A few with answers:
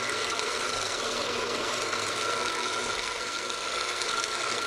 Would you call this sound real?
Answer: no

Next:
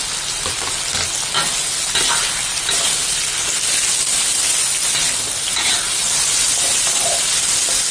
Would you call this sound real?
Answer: yes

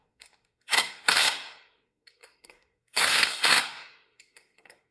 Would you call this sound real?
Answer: no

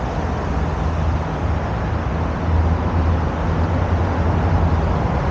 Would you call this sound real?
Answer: yes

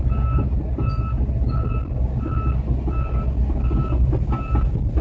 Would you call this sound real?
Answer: yes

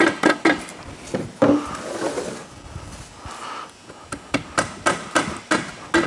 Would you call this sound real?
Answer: yes